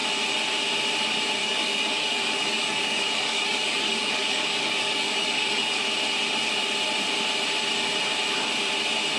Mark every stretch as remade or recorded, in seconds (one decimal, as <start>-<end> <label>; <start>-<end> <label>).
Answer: 0.0-1.4 recorded; 1.4-5.8 remade; 5.8-9.2 recorded